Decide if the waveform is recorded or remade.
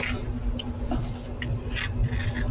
recorded